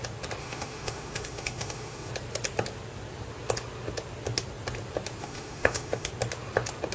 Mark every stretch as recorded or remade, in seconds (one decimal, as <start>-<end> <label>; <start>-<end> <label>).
0.0-0.4 recorded; 0.4-2.1 remade; 2.1-5.2 recorded; 5.2-6.1 remade; 6.1-6.9 recorded